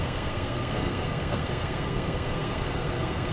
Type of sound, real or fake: fake